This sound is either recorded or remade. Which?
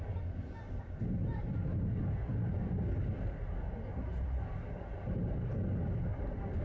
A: recorded